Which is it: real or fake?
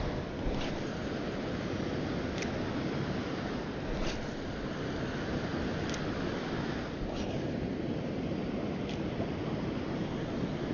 real